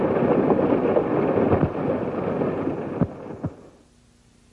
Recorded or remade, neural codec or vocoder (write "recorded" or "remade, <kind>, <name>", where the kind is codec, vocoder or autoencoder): recorded